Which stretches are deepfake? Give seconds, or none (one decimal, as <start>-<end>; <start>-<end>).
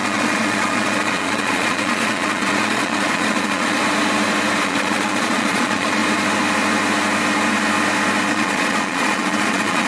0.0-3.8; 4.6-6.0; 8.3-9.9